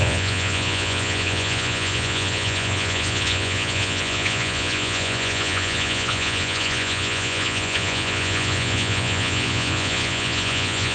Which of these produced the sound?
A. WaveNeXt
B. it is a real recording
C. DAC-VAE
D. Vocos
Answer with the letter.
D